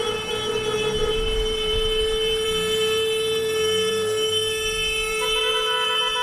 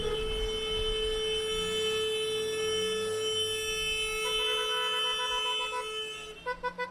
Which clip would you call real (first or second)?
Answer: second